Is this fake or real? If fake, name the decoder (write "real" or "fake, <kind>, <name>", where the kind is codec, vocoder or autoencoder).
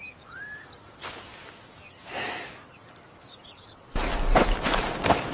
real